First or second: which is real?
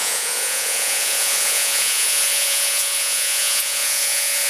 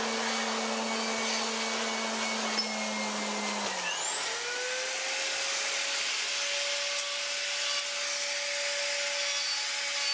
second